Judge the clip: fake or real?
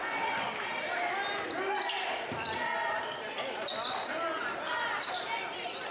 real